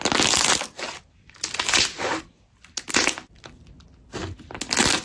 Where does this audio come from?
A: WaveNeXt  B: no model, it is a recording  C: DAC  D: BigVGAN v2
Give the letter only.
B